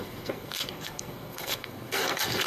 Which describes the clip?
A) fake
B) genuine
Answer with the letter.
A